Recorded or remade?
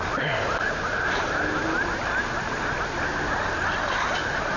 recorded